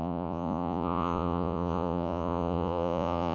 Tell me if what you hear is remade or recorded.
remade